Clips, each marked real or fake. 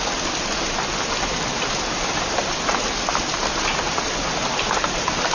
real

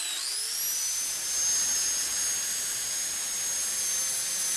real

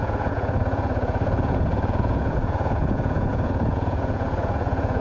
fake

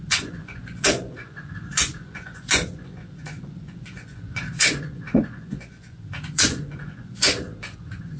fake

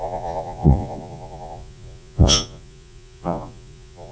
fake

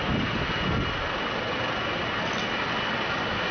real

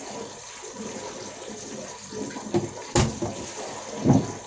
real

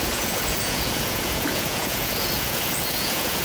fake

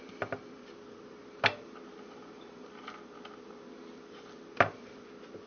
real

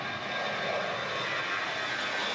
real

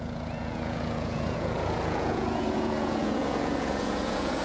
fake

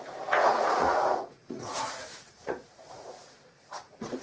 fake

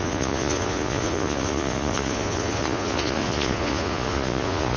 fake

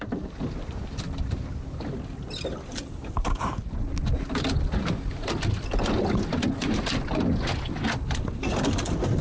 real